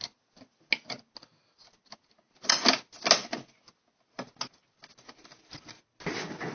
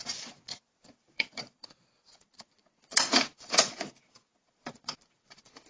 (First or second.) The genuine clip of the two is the first